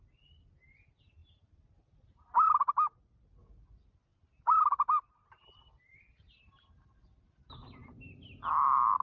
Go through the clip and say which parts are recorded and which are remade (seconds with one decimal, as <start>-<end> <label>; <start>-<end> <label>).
0.0-1.2 recorded; 1.2-2.7 remade; 2.7-4.1 recorded; 4.1-5.5 remade; 5.5-5.9 recorded; 5.9-8.5 remade; 8.5-9.0 recorded